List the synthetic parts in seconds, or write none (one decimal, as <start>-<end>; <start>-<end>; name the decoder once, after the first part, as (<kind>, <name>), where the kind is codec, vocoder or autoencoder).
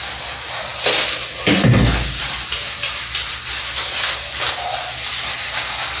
none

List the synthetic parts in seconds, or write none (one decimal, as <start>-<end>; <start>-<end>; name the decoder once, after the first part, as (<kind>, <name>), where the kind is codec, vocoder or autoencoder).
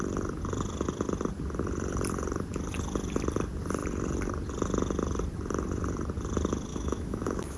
6.7-7.6 (autoencoder, DAC-VAE)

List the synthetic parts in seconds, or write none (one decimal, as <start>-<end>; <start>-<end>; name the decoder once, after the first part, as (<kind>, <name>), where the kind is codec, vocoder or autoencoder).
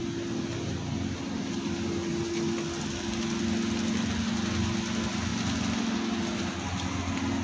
none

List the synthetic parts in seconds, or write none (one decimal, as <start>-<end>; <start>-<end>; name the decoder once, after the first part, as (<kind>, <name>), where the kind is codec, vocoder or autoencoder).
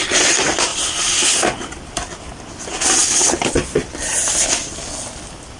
3.0-3.5 (codec, HILCodec)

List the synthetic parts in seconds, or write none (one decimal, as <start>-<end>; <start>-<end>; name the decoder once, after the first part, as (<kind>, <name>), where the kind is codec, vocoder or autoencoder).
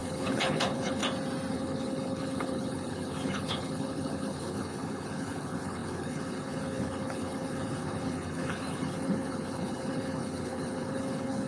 0.0-1.0 (codec, HILCodec); 1.5-11.5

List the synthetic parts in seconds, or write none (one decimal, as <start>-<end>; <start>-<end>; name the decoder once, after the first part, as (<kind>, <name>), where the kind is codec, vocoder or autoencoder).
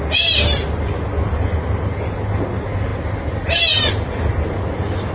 none